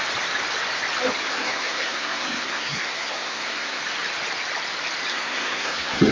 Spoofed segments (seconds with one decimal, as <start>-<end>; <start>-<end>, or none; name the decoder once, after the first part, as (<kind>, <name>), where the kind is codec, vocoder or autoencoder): 1.3-3.8 (codec, SNAC); 5.1-6.1